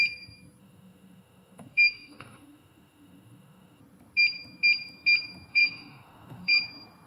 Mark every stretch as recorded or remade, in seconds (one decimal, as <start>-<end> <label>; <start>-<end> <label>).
0.0-0.6 recorded; 0.6-3.8 remade; 3.8-5.5 recorded; 5.5-6.6 remade; 6.6-7.1 recorded